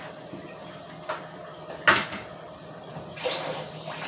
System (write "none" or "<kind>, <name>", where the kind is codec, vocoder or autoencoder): none